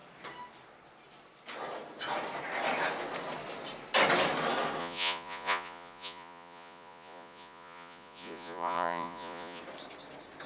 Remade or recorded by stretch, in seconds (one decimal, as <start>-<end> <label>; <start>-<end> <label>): 0.0-4.8 recorded; 4.8-9.6 remade; 9.6-10.5 recorded